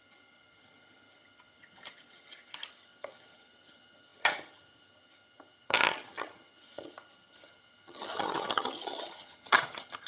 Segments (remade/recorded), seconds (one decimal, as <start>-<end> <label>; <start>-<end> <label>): 0.0-10.1 remade